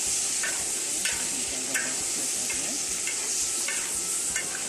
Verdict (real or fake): real